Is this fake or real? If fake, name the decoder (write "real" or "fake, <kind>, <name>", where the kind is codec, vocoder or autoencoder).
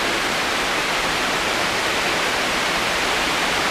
real